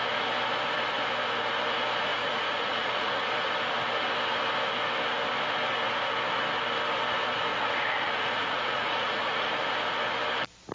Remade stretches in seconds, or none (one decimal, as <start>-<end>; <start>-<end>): 2.1-3.2; 7.5-9.5